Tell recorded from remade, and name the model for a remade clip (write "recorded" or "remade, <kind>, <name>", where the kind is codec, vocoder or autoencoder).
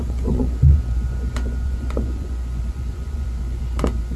remade, vocoder, Vocos